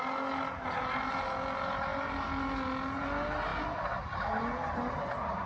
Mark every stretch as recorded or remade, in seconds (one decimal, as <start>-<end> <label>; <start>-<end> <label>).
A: 0.0-5.5 recorded